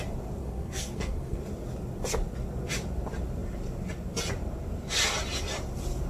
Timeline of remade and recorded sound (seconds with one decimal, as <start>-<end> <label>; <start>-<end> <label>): 0.0-0.4 recorded; 0.4-1.4 remade; 1.4-6.1 recorded